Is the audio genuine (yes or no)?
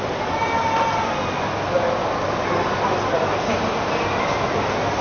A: yes